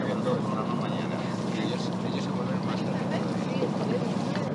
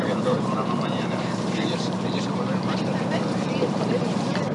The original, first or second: first